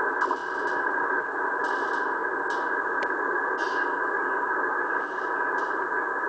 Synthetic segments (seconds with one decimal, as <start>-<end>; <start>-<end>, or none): none